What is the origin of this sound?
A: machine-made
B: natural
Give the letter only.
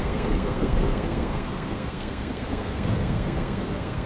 A